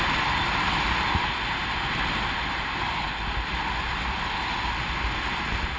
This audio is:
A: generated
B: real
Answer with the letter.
B